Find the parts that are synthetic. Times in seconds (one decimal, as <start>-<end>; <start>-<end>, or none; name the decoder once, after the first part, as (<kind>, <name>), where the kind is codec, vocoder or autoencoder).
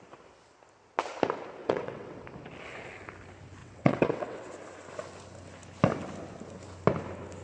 1.6-2.2 (vocoder, WaveNeXt); 3.6-4.5